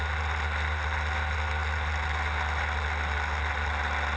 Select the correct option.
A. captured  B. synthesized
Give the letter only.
A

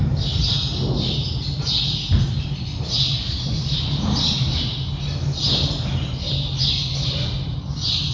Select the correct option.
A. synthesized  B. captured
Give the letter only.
B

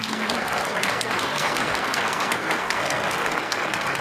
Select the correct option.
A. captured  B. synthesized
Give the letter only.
B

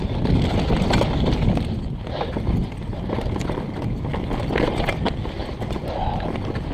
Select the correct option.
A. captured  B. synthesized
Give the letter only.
A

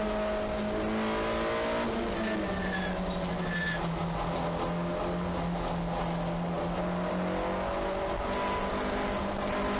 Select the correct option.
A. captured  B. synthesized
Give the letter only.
A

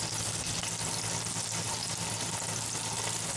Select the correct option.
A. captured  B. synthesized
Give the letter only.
A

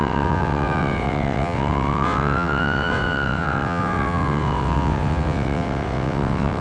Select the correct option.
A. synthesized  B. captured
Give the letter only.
A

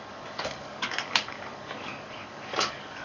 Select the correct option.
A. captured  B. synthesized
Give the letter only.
B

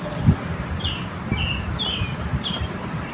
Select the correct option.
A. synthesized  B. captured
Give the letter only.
A